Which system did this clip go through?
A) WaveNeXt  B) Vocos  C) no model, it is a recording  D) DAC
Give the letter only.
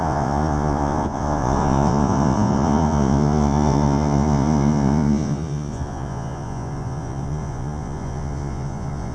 B